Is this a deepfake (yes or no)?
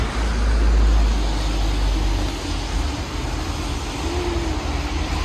no